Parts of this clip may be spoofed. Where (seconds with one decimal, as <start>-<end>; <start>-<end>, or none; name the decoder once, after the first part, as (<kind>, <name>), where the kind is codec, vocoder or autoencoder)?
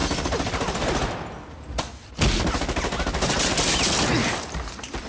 none